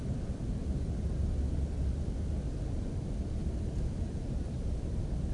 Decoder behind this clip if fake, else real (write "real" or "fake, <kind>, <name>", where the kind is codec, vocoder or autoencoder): real